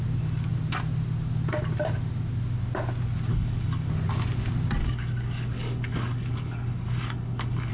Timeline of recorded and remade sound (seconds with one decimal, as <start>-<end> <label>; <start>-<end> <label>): 0.0-3.3 recorded; 3.3-3.9 remade; 3.9-4.8 recorded; 4.8-7.7 remade